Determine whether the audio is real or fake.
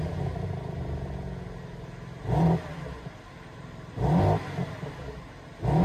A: real